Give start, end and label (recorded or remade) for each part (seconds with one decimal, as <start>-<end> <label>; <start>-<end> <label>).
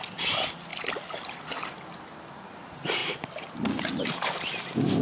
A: 0.0-5.0 recorded